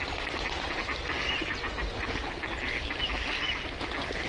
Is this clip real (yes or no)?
yes